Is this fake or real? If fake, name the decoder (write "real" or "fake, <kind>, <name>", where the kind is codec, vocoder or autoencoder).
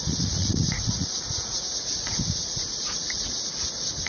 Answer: fake, vocoder, Vocos